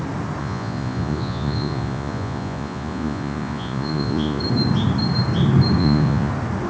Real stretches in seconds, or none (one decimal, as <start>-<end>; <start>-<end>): 0.0-0.4; 4.4-5.8; 6.3-6.7